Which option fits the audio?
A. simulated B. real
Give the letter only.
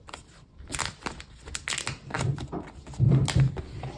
B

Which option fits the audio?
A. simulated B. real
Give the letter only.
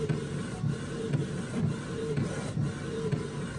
B